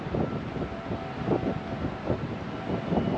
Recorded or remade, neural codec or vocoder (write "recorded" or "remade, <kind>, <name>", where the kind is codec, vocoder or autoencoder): recorded